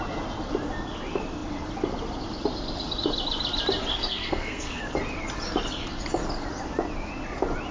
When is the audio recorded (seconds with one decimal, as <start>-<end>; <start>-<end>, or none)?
0.0-3.9; 4.8-7.7